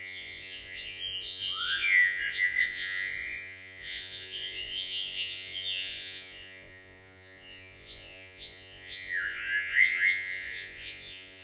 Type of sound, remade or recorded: remade